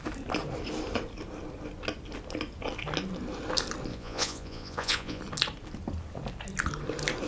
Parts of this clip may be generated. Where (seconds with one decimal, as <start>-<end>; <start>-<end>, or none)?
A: 3.9-5.2